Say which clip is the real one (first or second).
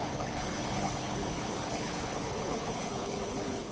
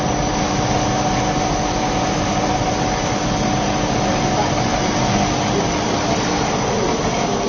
second